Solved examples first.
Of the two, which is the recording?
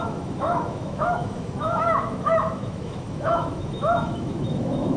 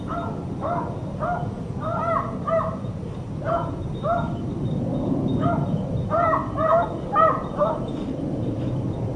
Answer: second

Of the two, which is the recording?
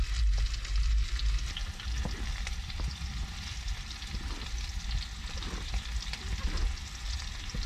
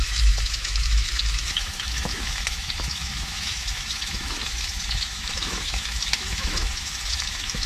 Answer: first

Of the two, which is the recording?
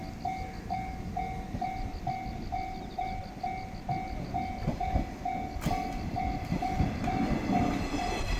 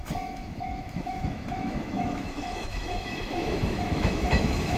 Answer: first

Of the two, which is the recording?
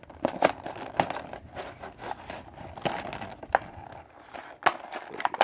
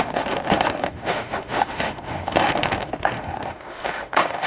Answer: first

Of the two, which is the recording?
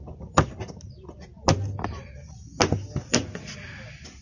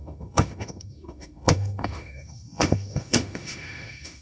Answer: first